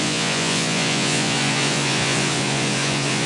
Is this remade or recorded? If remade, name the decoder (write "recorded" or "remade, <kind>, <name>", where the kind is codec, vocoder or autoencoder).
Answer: remade, vocoder, Vocos